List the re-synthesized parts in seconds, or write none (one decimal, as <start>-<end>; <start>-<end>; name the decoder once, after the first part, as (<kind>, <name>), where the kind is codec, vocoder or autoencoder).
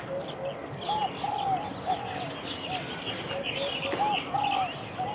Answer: none